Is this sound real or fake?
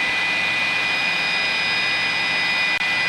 real